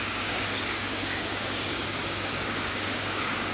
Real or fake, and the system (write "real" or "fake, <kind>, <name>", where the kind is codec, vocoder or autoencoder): fake, codec, DAC